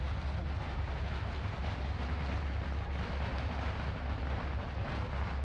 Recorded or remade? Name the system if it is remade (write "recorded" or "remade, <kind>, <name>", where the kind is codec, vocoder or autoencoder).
recorded